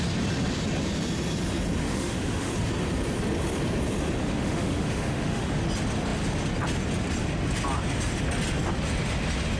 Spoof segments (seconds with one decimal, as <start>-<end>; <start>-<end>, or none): 1.8-2.5; 4.2-5.6